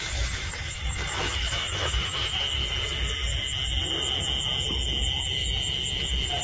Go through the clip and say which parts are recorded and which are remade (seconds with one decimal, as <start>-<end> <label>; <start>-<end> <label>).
0.0-0.4 recorded; 0.4-2.6 remade; 2.6-6.4 recorded